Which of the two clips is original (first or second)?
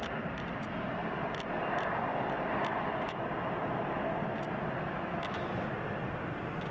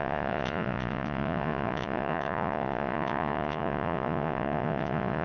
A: first